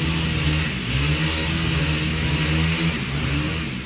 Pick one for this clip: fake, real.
real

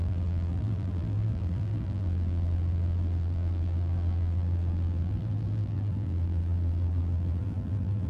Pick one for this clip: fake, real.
fake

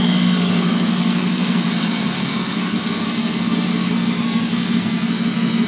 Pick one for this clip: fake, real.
fake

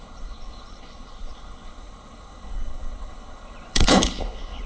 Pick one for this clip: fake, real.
fake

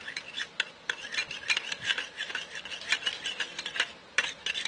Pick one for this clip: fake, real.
real